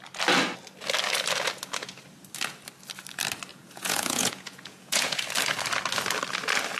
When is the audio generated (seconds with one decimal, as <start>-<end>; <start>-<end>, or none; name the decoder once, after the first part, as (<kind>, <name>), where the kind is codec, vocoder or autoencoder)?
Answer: 3.5-5.2 (vocoder, Vocos)